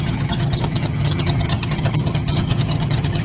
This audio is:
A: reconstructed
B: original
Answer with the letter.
A